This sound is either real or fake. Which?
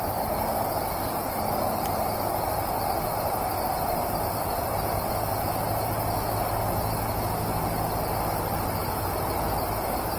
real